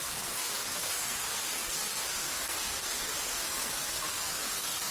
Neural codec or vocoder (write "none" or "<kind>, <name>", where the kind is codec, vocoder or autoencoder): codec, SNAC